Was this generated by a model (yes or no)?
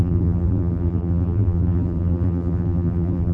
yes